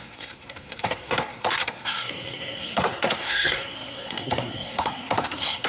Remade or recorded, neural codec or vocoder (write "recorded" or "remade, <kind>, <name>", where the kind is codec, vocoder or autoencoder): remade, codec, SNAC